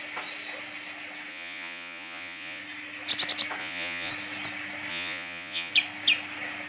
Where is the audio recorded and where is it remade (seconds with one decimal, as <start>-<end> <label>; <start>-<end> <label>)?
0.0-1.3 recorded; 1.3-2.6 remade; 2.6-3.6 recorded; 3.6-4.1 remade; 4.1-4.9 recorded; 4.9-5.7 remade; 5.7-6.7 recorded